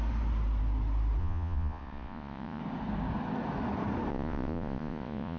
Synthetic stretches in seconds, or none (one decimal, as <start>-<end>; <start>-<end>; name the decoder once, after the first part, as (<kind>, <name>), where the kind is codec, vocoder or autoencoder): 1.2-2.6 (vocoder, Vocos); 4.1-5.4